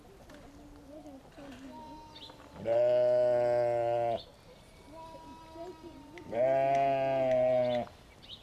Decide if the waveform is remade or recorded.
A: recorded